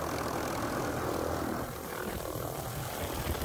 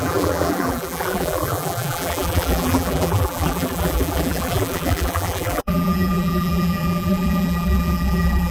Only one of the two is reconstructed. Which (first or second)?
second